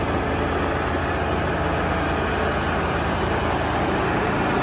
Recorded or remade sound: recorded